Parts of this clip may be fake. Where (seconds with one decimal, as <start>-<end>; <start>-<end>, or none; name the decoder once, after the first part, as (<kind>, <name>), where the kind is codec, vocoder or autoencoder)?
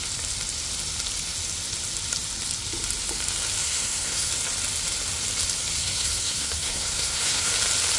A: 3.6-4.3 (codec, SNAC); 5.8-7.5